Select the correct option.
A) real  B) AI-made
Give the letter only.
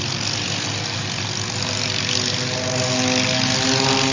A